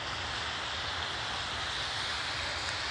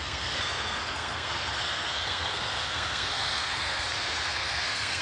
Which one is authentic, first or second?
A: first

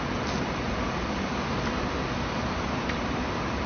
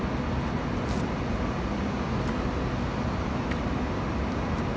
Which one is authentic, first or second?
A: second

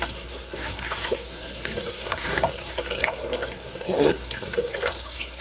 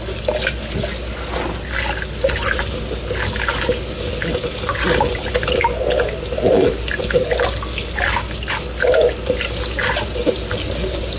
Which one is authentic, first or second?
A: second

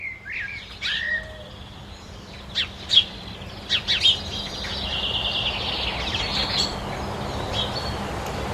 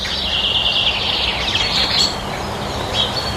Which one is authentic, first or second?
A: first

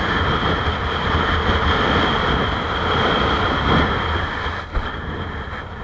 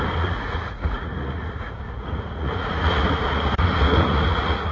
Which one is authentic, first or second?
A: first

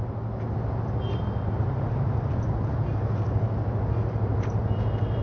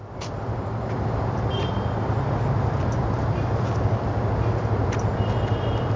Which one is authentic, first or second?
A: first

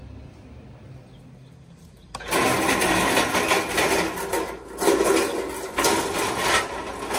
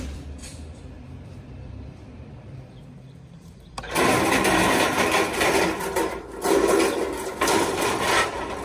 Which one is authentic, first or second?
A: first